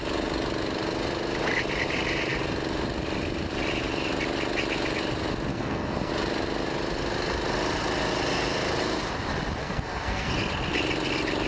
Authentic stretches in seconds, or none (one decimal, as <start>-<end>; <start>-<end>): 0.0-5.5; 6.1-9.6; 10.3-11.5